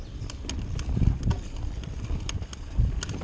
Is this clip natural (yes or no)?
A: no